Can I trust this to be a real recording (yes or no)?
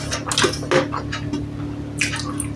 yes